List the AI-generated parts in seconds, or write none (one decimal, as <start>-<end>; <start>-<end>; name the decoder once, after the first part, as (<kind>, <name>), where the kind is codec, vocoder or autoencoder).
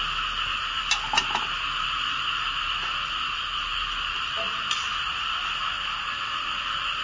none